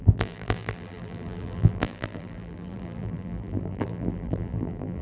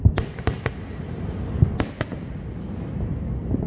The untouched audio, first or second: second